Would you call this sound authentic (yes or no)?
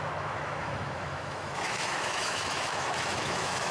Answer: no